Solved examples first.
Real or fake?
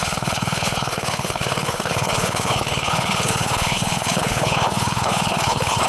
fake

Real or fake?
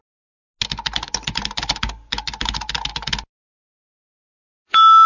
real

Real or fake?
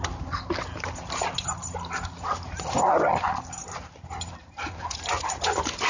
real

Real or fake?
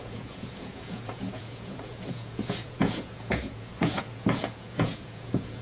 fake